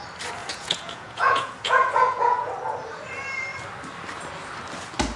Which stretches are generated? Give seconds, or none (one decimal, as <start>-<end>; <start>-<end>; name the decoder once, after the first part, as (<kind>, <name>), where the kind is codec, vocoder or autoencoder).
0.4-2.5 (vocoder, Vocos)